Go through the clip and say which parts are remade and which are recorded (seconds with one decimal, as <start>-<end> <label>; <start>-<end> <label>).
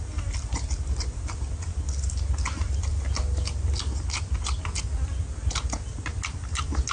0.0-6.9 recorded